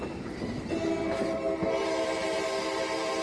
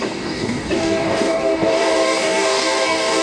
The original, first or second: first